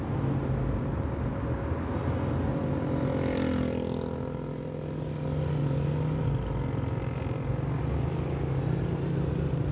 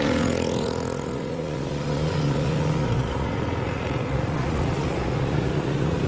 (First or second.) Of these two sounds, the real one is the first